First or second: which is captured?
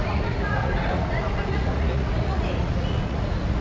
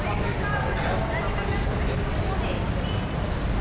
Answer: second